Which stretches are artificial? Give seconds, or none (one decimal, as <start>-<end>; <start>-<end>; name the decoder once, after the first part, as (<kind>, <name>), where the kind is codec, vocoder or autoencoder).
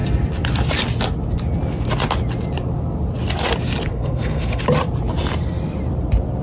3.9-4.6 (codec, SNAC)